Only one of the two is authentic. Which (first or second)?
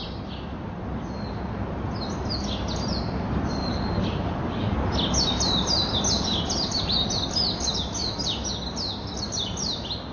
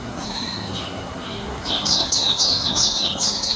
first